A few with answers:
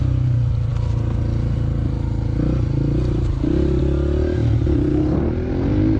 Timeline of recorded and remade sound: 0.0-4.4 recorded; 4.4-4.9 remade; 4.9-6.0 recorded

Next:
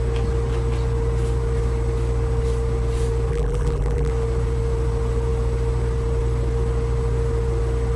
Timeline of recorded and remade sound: 0.0-3.3 recorded; 3.3-4.1 remade; 4.1-8.0 recorded

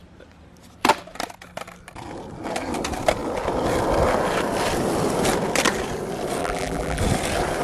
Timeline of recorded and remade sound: 0.0-6.4 recorded; 6.4-7.0 remade; 7.0-7.6 recorded

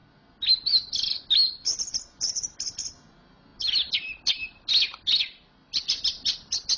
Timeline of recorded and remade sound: 0.0-6.8 recorded

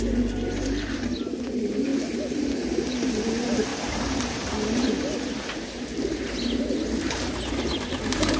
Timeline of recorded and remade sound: 0.0-3.7 recorded; 3.7-5.6 remade; 5.6-8.4 recorded

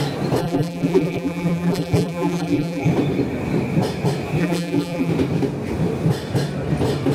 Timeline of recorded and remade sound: 0.0-0.4 recorded; 0.4-2.9 remade; 2.9-4.4 recorded; 4.4-5.1 remade; 5.1-7.1 recorded

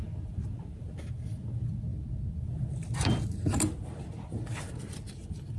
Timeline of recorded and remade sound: 0.0-5.6 recorded